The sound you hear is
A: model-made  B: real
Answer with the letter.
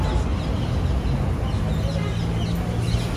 B